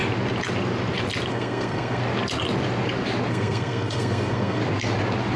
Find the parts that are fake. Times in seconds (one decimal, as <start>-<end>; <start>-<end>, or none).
1.3-2.0; 3.3-4.6

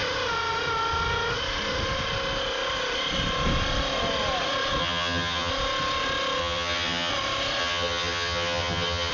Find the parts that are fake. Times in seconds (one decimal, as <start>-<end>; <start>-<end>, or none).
4.8-5.5; 6.4-7.1; 7.6-9.1